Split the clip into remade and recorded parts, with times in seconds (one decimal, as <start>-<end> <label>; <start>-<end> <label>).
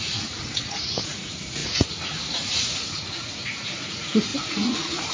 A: 0.0-5.1 remade